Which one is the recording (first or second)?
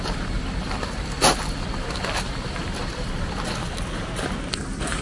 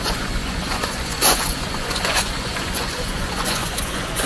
first